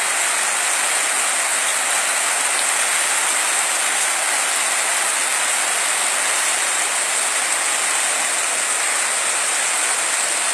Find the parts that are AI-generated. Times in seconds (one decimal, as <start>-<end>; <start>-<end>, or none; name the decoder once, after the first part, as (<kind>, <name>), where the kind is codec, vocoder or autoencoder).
none